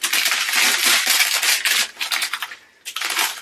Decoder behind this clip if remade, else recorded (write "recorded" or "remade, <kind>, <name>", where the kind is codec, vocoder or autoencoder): recorded